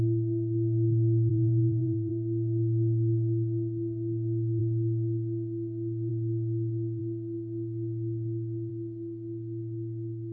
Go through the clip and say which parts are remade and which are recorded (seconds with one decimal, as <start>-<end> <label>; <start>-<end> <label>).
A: 0.0-1.3 recorded; 1.3-2.1 remade; 2.1-10.3 recorded